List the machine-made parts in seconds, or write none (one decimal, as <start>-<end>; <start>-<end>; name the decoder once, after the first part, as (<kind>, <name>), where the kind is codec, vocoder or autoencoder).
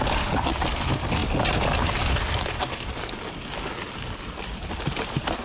none